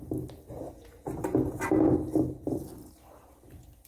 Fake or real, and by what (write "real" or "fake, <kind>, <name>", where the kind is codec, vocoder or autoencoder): real